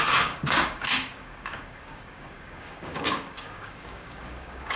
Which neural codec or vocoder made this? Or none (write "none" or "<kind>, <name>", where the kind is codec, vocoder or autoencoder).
codec, DAC